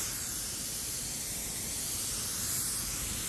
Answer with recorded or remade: remade